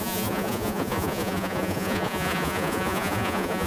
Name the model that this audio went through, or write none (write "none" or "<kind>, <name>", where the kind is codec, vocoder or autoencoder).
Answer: vocoder, Vocos